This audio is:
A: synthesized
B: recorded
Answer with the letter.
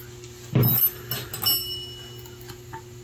B